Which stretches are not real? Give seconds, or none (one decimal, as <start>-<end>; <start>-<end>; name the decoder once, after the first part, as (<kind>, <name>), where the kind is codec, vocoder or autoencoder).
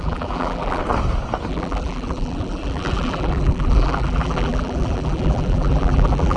0.0-0.8 (vocoder, BigVGAN v2); 1.5-6.4